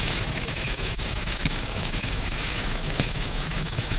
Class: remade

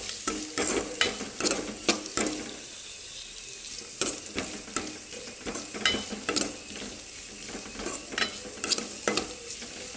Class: recorded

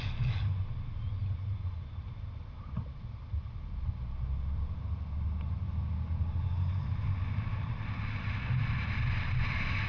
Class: recorded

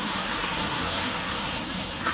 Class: remade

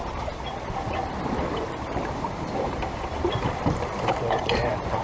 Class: remade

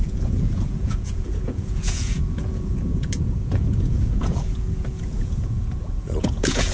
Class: remade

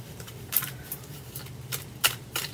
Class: remade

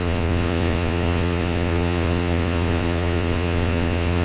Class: remade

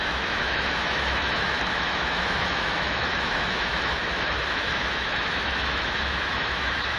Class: remade